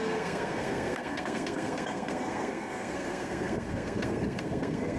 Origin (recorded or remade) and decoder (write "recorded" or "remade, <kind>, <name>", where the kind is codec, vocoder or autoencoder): remade, codec, SNAC